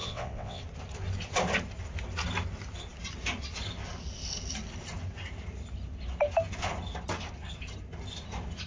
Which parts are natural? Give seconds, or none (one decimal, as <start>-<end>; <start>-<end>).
0.6-8.7